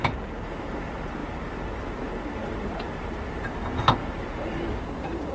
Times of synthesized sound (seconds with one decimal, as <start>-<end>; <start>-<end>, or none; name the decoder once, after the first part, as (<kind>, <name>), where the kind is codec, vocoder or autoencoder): 2.4-3.6 (vocoder, BigVGAN v2); 4.0-5.3